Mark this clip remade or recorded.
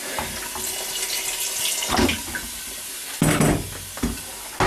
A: recorded